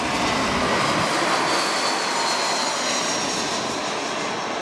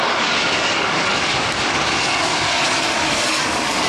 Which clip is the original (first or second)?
first